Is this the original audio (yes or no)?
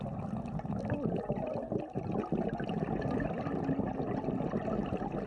yes